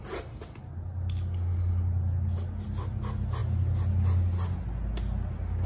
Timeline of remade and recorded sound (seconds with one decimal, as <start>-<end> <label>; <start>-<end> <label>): 0.0-5.7 recorded